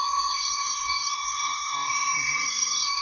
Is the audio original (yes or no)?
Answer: no